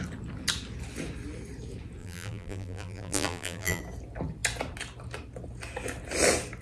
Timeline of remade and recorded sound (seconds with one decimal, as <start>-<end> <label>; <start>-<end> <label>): 0.0-2.0 recorded; 2.0-3.8 remade; 3.8-6.6 recorded